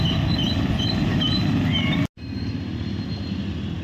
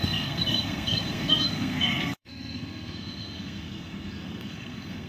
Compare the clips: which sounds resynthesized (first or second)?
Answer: second